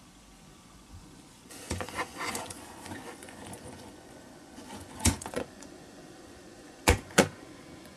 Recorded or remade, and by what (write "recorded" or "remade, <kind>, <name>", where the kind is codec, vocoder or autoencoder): remade, vocoder, Vocos